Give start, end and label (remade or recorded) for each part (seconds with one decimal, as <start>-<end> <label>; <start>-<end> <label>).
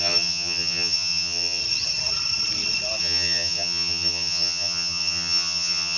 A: 0.0-1.6 remade; 1.6-3.0 recorded; 3.0-6.0 remade